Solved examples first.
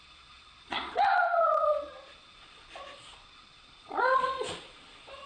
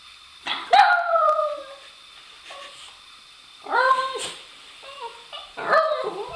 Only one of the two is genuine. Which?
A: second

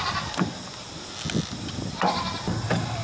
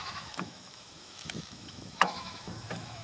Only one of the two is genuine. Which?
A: first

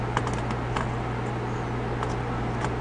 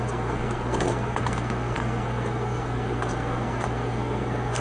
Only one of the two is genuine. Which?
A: first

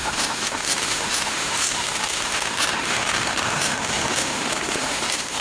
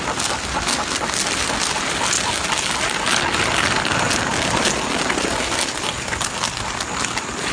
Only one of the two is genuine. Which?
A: second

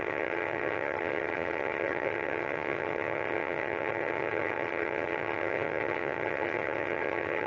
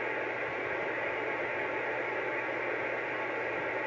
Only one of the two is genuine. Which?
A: second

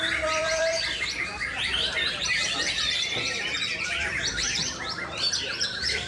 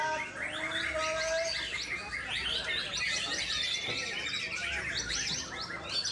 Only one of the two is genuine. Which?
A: second